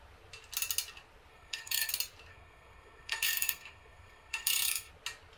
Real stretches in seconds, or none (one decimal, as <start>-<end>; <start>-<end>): 0.0-1.3; 1.9-2.3; 4.9-5.4